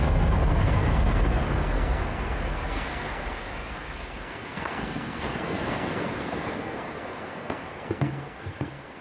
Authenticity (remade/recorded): remade